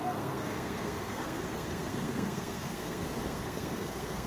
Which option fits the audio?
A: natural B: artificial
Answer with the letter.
B